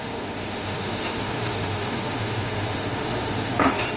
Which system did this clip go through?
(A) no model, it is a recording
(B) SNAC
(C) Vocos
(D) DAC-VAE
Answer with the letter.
D